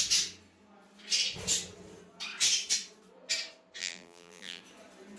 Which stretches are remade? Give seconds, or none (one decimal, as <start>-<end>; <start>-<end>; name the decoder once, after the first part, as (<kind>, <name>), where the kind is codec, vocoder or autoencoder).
3.8-4.6 (vocoder, BigVGAN v2)